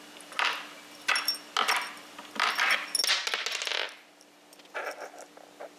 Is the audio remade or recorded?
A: recorded